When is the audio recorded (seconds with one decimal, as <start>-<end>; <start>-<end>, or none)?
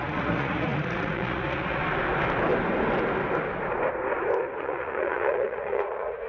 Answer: 1.8-4.6